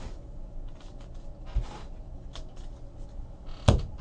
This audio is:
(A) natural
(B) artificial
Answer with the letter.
A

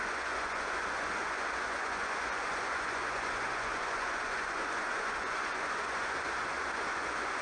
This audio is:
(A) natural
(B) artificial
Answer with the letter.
B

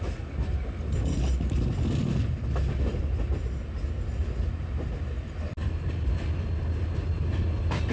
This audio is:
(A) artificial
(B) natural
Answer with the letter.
B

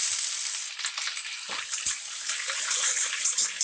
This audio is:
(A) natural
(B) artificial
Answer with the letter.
A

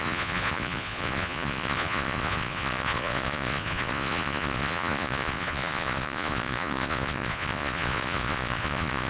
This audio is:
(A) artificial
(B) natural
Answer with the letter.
A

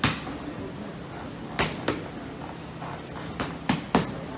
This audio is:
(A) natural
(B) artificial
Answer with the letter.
A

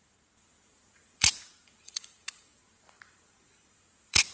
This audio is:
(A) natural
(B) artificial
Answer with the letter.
B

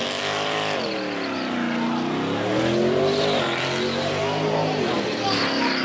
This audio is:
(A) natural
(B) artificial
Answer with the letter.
A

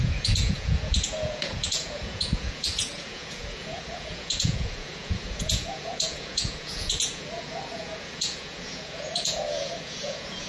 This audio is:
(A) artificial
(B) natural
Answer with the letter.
A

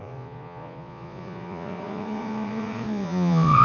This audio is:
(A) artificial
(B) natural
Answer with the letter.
A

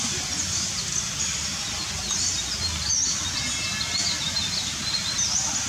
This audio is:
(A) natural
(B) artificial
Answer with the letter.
A